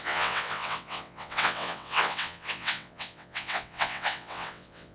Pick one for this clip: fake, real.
fake